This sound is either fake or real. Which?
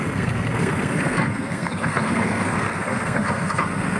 fake